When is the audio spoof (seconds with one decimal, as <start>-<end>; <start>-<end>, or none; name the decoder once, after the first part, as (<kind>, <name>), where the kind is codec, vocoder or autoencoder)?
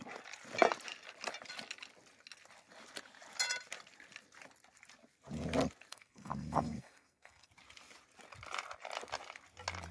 5.9-7.5 (codec, SNAC)